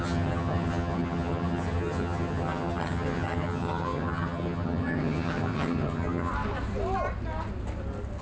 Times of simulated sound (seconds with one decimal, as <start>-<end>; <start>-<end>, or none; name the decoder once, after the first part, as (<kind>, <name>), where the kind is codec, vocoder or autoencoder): 0.0-6.3 (vocoder, HiFi-GAN)